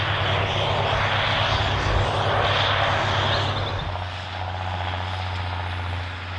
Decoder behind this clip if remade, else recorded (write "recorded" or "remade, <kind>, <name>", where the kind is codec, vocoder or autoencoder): recorded